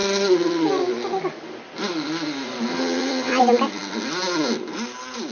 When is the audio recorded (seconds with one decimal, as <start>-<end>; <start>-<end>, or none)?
0.0-2.7; 3.4-5.3